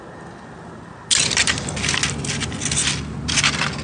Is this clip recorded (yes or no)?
yes